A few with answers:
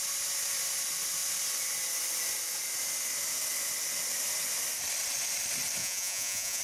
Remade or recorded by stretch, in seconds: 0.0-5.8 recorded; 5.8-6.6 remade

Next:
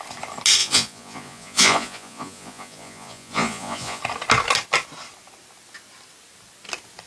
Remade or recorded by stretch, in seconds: 0.0-0.6 recorded; 0.6-4.0 remade; 4.0-7.1 recorded

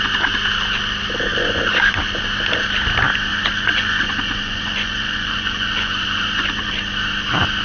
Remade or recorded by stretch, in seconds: 0.0-1.3 recorded; 1.3-2.0 remade; 2.0-3.3 recorded; 3.3-6.7 remade; 6.7-7.6 recorded

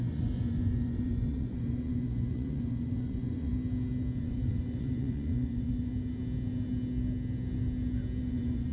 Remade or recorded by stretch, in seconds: 0.0-3.5 remade; 3.5-4.2 recorded; 4.2-5.9 remade; 5.9-8.2 recorded; 8.2-8.7 remade

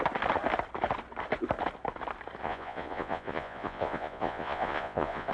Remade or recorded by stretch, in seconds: 0.0-2.4 recorded; 2.4-5.3 remade

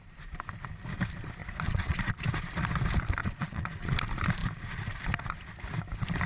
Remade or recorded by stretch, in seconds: 0.0-1.4 recorded; 1.4-2.1 remade; 2.1-3.2 recorded; 3.2-3.9 remade; 3.9-6.3 recorded

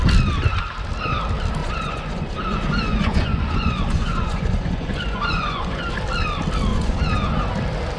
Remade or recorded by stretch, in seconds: 0.0-1.6 recorded; 1.6-5.9 remade; 5.9-6.7 recorded; 6.7-7.5 remade; 7.5-8.0 recorded